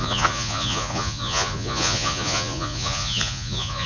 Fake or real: fake